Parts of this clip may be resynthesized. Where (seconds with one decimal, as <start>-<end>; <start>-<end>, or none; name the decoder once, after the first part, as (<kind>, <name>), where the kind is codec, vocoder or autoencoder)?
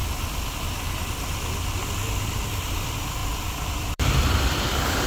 3.2-4.5 (vocoder, BigVGAN v2)